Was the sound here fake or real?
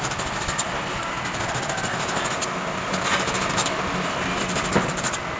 real